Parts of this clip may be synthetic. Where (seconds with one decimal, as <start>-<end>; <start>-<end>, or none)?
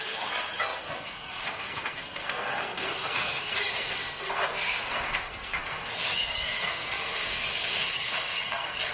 0.0-8.9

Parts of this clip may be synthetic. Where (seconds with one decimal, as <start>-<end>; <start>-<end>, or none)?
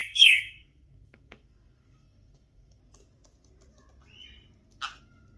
0.0-2.8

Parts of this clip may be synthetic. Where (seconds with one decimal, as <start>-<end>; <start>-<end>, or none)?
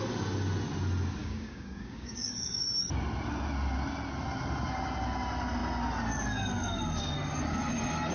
1.2-2.6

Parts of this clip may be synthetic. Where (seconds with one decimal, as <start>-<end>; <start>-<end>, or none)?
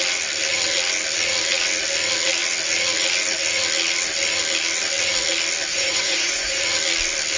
5.7-6.6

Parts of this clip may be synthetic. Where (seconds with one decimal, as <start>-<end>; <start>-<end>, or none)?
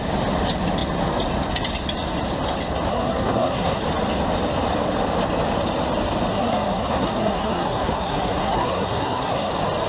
2.9-3.8; 6.3-9.5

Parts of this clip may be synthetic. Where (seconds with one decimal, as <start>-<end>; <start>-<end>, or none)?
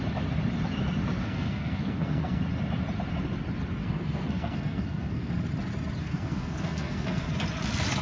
1.2-2.4; 3.8-5.3; 6.0-7.3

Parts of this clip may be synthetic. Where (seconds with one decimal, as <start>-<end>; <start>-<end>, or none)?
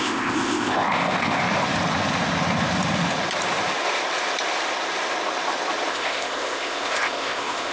0.0-1.4; 5.9-7.7